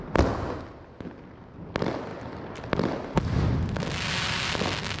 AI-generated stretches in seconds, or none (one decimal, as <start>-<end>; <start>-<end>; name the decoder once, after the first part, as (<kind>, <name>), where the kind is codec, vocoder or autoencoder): none